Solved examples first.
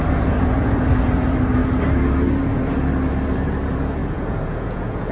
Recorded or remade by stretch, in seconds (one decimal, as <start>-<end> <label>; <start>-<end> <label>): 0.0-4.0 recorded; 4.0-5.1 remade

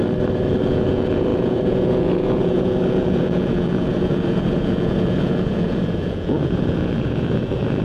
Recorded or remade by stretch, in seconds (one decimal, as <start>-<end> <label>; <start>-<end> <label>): 0.0-0.6 recorded; 0.6-7.8 remade

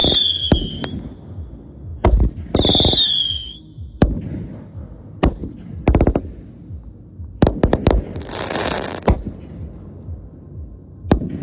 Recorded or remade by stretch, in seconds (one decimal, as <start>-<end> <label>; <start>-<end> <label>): 0.0-11.4 recorded

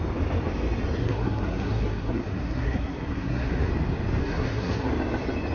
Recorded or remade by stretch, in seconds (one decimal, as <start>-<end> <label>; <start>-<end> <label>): 0.0-1.0 recorded; 1.0-3.7 remade; 3.7-4.2 recorded; 4.2-4.9 remade; 4.9-5.5 recorded

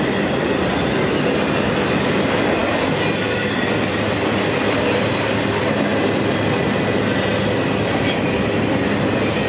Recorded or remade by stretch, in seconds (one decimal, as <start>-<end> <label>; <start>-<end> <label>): 0.0-9.5 recorded

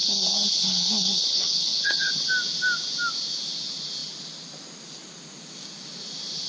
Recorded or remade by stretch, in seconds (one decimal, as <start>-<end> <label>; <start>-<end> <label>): 0.0-2.1 remade; 2.1-6.5 recorded

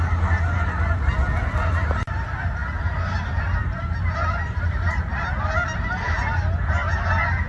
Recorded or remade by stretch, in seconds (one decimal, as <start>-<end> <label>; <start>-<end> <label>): 0.0-7.5 recorded

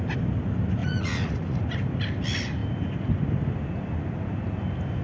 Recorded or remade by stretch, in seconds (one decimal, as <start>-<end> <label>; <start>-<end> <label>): 0.0-0.8 recorded; 0.8-1.6 remade; 1.6-5.0 recorded